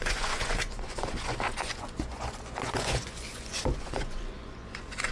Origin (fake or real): fake